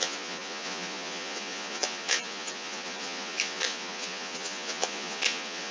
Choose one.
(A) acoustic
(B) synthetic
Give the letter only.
B